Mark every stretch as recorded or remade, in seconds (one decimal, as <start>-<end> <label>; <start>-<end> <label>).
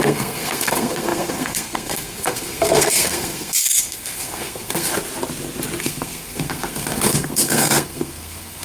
0.0-4.9 remade; 4.9-5.8 recorded; 5.8-8.6 remade